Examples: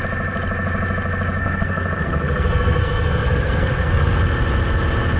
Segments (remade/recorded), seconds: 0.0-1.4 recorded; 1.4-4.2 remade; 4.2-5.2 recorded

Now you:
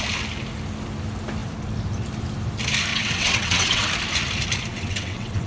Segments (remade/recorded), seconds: 0.0-2.9 recorded; 2.9-3.9 remade; 3.9-4.7 recorded; 4.7-5.5 remade

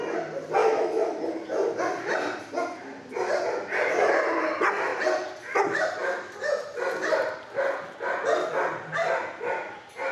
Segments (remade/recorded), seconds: 0.0-0.6 recorded; 0.6-1.2 remade; 1.2-10.1 recorded

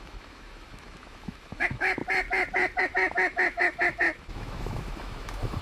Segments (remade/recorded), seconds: 0.0-2.0 remade; 2.0-2.8 recorded; 2.8-5.6 remade

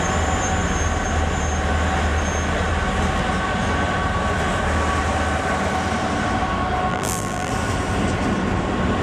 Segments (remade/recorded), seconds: 0.0-6.9 recorded; 6.9-7.5 remade; 7.5-9.0 recorded

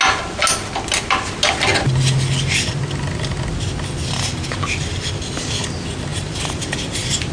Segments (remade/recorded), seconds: 0.0-7.3 recorded